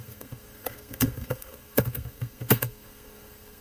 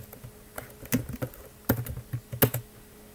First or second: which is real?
second